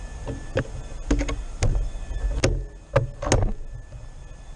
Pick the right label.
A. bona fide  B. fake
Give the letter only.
A